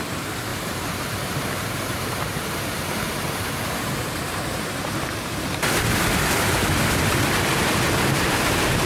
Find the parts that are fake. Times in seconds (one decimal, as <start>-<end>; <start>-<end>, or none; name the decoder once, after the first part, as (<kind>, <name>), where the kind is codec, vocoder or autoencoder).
0.5-5.7 (vocoder, BigVGAN v2)

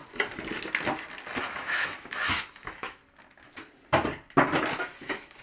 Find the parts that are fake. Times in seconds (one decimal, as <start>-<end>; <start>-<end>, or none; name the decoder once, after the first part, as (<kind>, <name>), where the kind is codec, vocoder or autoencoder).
1.4-3.0 (autoencoder, DAC-VAE); 5.0-5.4